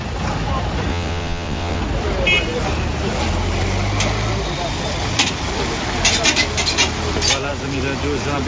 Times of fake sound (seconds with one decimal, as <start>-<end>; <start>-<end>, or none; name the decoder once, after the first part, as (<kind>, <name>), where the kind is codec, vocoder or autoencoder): 0.9-1.8 (vocoder, WaveNeXt)